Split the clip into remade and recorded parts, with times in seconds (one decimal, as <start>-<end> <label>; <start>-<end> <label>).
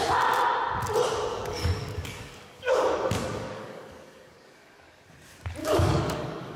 0.0-1.3 recorded; 1.3-5.0 remade; 5.0-5.6 recorded; 5.6-6.6 remade